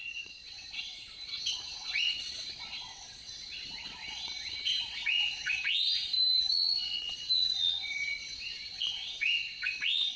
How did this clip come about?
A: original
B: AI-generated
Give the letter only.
B